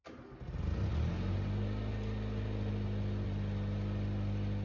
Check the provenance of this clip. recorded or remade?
recorded